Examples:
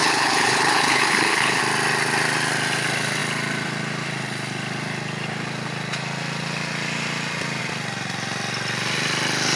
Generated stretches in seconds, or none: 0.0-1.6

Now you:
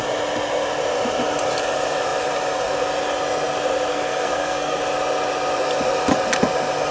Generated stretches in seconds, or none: 3.9-4.8

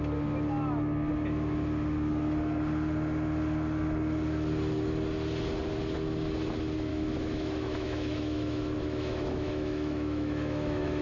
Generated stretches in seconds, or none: 6.9-11.0

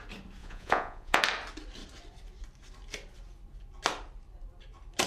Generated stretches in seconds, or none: 0.4-1.2

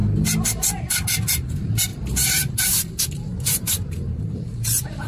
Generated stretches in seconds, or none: 1.9-2.6; 3.3-4.5

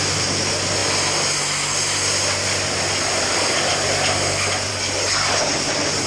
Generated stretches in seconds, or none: 4.7-5.4

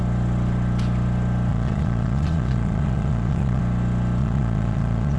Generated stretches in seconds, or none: 1.5-3.6; 4.2-5.2

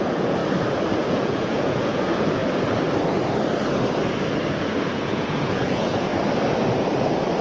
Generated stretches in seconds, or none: 0.0-0.4; 1.1-2.4; 4.5-6.1